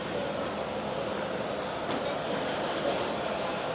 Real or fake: real